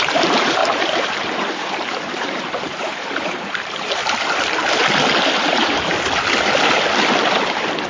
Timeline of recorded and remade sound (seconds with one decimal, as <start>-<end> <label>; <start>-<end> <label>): 0.0-4.0 remade; 4.0-7.5 recorded; 7.5-7.9 remade

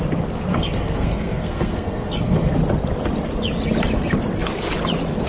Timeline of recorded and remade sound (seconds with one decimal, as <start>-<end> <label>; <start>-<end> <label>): 0.0-0.5 recorded; 0.5-2.5 remade; 2.5-5.3 recorded

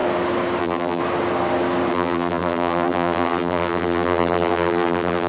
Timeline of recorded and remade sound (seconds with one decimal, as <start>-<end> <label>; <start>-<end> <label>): 0.0-0.6 recorded; 0.6-1.0 remade; 1.0-1.9 recorded; 1.9-5.3 remade

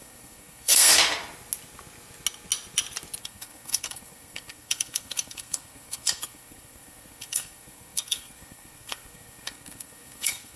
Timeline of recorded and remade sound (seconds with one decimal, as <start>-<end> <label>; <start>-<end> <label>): 0.0-0.9 remade; 0.9-3.2 recorded; 3.2-10.6 remade

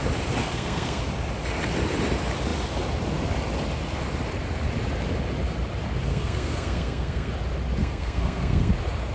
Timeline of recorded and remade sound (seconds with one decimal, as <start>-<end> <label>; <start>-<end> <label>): 0.0-0.4 recorded; 0.4-1.0 remade; 1.0-6.1 recorded; 6.1-7.3 remade; 7.3-7.8 recorded; 7.8-8.7 remade; 8.7-9.1 recorded